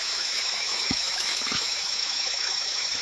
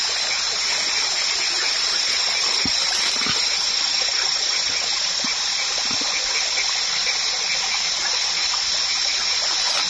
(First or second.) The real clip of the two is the second